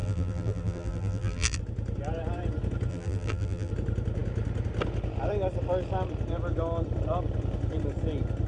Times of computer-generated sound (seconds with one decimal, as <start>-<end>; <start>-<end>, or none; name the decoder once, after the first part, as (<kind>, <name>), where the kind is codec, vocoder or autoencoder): 0.0-1.6 (vocoder, BigVGAN v2); 2.9-3.7